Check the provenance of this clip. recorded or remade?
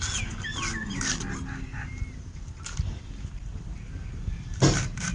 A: recorded